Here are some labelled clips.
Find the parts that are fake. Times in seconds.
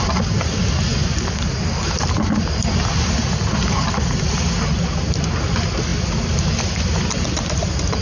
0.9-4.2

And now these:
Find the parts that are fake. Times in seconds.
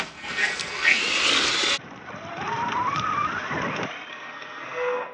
0.0-1.0; 4.1-5.1